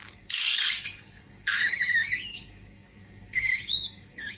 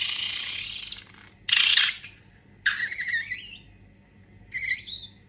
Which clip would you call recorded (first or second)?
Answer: second